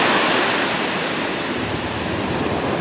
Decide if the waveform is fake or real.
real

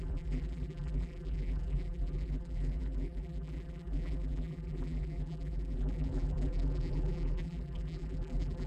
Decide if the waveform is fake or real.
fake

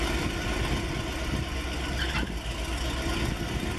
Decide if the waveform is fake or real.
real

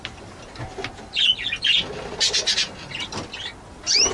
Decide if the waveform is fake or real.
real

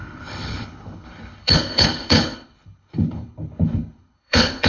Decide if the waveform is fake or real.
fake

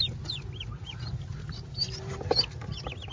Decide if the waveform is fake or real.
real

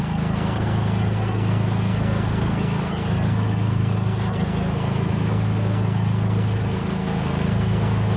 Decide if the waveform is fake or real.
fake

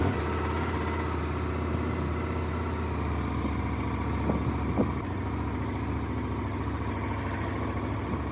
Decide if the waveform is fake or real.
real